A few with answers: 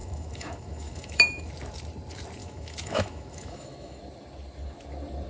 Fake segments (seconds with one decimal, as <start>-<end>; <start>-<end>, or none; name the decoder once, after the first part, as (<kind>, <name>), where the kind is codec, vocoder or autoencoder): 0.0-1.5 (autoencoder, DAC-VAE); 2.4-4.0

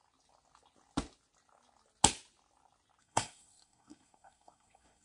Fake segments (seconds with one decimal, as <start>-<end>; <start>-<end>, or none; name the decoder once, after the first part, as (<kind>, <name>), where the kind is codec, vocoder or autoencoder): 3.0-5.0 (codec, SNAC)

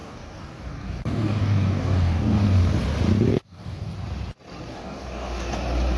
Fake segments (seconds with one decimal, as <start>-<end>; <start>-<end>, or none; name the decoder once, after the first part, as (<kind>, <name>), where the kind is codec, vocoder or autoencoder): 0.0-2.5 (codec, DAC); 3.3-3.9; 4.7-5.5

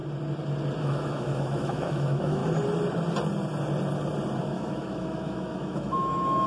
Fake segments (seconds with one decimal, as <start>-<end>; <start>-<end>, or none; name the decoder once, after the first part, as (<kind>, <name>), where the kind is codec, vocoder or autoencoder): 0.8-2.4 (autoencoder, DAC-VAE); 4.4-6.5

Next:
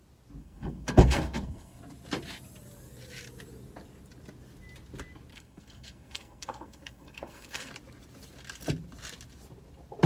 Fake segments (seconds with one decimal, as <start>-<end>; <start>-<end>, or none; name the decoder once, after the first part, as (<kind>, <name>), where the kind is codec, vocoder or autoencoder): 0.4-1.8 (codec, SNAC); 5.3-7.7

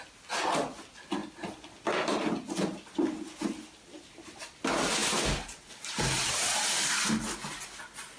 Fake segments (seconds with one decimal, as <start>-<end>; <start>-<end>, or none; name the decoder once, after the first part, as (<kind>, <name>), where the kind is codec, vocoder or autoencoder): none

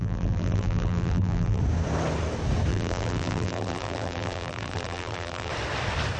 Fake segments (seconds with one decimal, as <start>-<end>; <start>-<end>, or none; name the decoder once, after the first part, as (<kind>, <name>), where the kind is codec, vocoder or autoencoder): 0.0-1.6 (vocoder, BigVGAN v2); 2.7-5.5